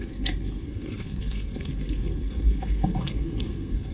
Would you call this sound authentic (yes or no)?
no